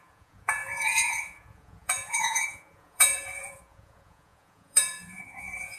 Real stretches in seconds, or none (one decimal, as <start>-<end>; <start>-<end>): none